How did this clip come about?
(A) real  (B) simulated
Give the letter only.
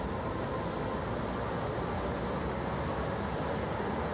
A